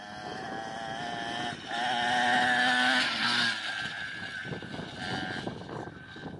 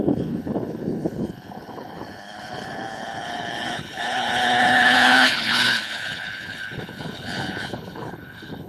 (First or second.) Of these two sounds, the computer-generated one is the second